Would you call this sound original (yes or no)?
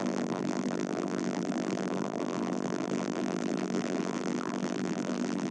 no